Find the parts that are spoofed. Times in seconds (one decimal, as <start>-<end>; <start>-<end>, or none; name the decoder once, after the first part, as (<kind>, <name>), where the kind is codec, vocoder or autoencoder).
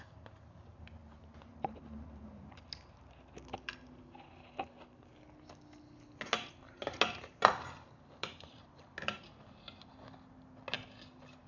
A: 1.0-2.6 (vocoder, BigVGAN v2)